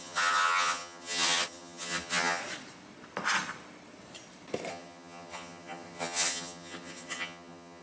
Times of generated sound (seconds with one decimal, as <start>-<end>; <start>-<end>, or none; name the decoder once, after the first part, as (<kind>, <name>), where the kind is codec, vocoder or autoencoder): 0.0-2.4 (vocoder, HiFi-GAN); 4.7-7.8